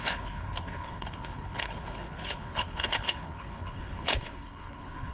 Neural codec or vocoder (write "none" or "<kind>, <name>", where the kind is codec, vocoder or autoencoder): codec, HILCodec